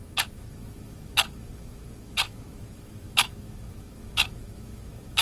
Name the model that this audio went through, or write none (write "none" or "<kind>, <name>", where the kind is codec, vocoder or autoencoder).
autoencoder, DAC-VAE